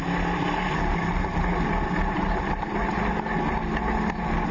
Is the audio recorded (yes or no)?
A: yes